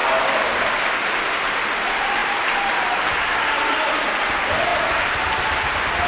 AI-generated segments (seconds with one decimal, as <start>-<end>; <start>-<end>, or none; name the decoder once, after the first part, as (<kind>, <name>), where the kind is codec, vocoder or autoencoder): 2.2-3.1 (vocoder, BigVGAN v2)